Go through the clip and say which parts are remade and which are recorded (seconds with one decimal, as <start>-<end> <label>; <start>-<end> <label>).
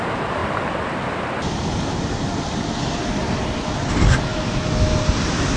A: 0.0-4.3 recorded; 4.3-5.0 remade; 5.0-5.6 recorded